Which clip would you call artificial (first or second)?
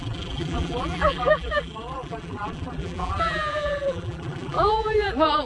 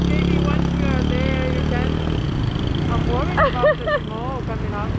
first